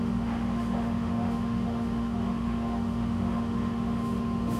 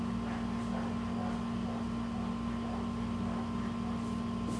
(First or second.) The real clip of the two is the second